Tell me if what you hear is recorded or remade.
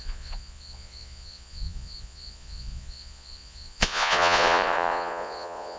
remade